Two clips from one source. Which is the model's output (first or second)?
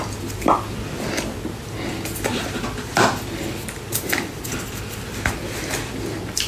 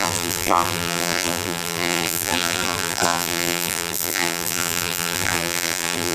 second